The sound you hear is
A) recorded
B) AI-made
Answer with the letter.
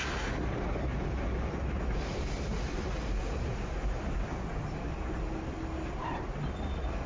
A